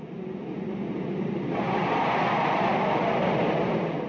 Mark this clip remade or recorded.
recorded